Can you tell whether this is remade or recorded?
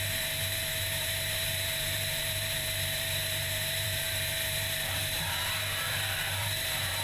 remade